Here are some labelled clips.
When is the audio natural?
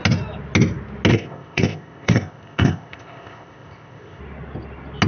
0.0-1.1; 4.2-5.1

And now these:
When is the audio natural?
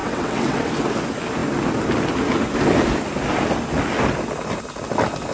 0.7-5.3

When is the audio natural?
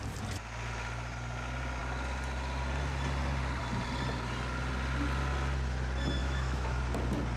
0.0-6.2; 6.8-7.4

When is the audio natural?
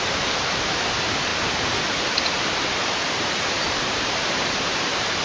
1.3-2.1